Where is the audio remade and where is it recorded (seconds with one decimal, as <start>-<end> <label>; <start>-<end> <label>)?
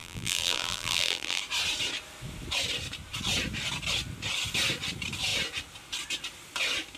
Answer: 0.0-1.4 remade; 1.4-7.0 recorded